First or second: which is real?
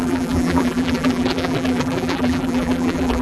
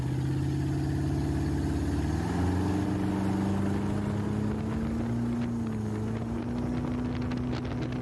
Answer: second